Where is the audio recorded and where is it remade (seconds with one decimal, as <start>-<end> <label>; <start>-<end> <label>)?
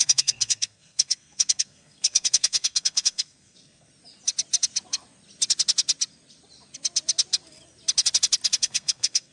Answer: 0.0-3.9 remade; 3.9-8.6 recorded; 8.6-9.3 remade